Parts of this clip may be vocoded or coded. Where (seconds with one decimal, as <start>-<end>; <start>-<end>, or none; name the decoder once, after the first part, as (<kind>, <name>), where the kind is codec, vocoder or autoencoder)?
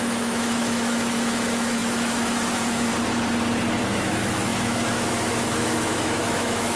0.0-2.9 (autoencoder, DAC-VAE); 3.8-6.8